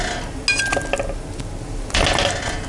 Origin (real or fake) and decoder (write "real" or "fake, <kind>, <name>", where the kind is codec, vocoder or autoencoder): real